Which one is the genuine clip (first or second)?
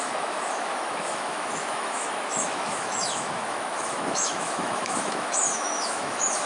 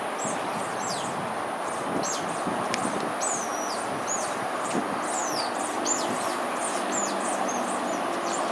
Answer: second